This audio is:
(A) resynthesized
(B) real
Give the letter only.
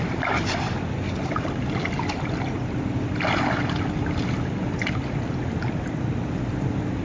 B